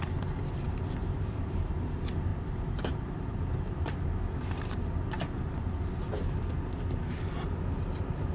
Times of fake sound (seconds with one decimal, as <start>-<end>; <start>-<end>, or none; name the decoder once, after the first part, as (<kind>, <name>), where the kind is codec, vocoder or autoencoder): 1.0-1.7 (vocoder, BigVGAN v2); 2.3-3.4